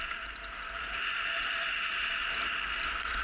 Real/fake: real